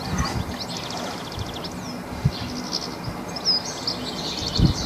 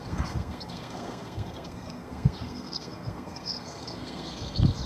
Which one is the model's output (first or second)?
second